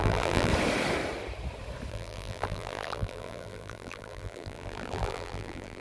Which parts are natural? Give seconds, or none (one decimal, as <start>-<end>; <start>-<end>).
0.5-1.9